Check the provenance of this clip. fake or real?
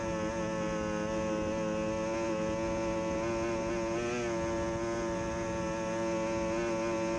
real